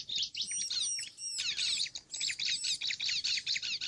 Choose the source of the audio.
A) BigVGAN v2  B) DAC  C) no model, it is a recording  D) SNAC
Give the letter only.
C